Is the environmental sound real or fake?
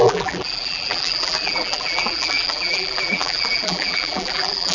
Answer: fake